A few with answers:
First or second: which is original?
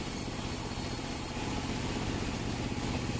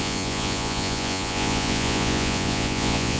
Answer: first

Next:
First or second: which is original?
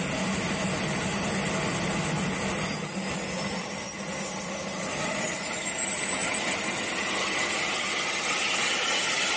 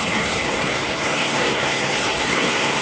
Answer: first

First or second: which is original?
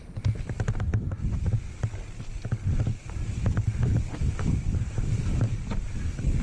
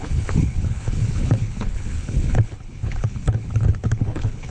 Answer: first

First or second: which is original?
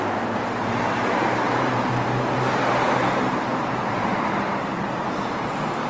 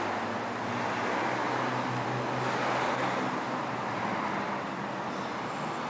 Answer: second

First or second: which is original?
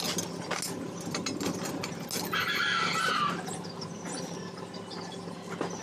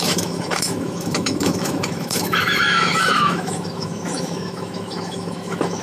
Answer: first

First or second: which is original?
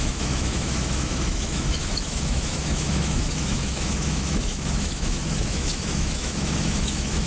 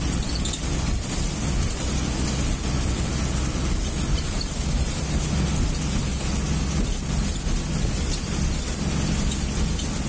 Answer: second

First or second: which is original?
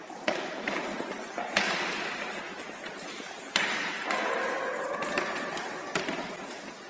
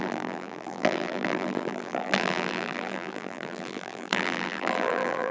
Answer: first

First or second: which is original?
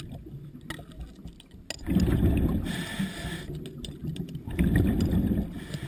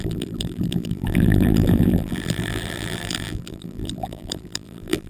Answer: first